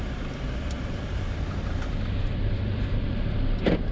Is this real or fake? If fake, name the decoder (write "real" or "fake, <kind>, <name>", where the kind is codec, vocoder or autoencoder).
fake, vocoder, BigVGAN v2